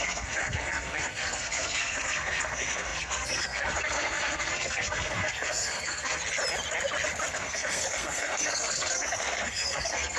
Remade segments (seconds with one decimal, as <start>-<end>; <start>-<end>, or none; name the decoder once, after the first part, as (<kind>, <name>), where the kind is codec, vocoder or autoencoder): 0.0-6.2 (codec, SNAC); 7.3-10.2